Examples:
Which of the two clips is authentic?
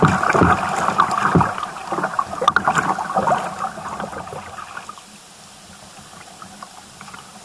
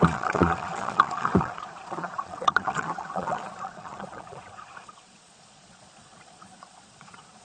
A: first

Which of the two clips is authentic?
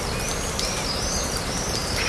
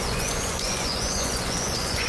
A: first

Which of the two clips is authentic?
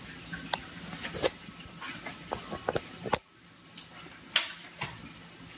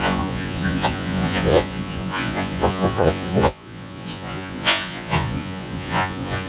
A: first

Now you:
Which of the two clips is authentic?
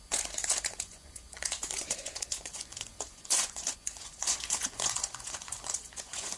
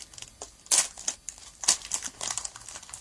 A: second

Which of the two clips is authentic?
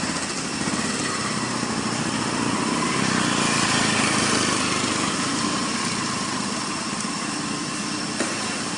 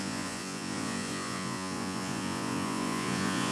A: first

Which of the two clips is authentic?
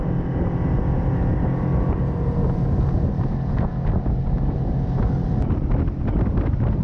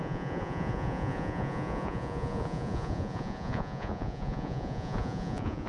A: first